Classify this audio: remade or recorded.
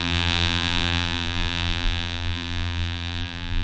remade